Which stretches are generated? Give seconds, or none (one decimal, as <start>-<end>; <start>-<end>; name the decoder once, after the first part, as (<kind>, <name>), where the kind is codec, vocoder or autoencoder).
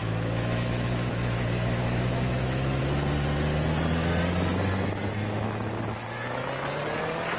0.0-2.8 (autoencoder, DAC-VAE)